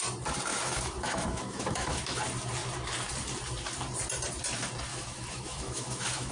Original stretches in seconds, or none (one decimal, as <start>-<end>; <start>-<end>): 0.0-0.5; 2.2-4.9